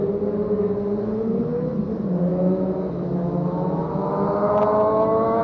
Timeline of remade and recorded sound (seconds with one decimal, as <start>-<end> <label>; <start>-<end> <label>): 0.0-2.3 recorded; 2.3-5.4 remade